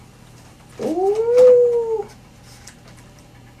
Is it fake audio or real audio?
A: real